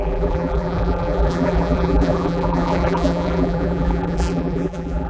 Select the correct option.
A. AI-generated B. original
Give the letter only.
A